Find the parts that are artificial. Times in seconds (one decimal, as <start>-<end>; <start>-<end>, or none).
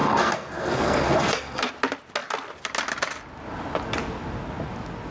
0.0-1.7